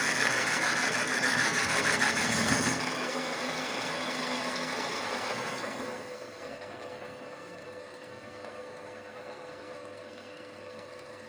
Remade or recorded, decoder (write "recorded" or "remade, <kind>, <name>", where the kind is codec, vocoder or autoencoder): remade, codec, SNAC